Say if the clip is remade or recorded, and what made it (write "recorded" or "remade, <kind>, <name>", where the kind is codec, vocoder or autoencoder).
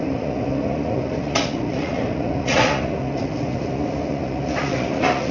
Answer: remade, vocoder, Vocos